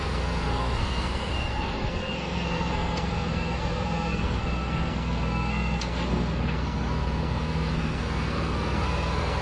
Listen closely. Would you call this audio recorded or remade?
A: remade